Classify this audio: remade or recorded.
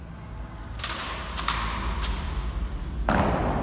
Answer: recorded